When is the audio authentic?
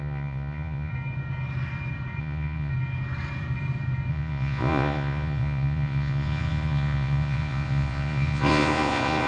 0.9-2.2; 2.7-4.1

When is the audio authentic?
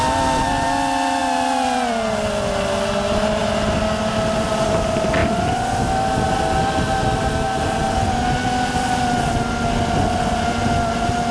0.0-11.3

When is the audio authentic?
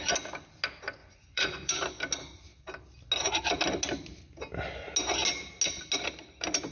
0.0-1.0; 1.7-6.7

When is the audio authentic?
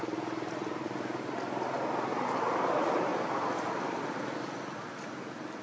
0.0-5.6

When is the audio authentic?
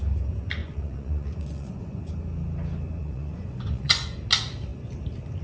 0.0-0.6; 2.1-3.0; 4.2-5.4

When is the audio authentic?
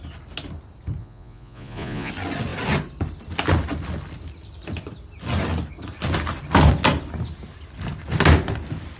0.0-1.0; 2.1-9.0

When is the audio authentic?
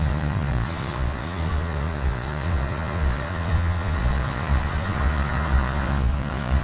none